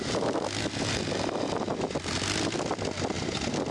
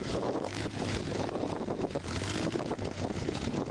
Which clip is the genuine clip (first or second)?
first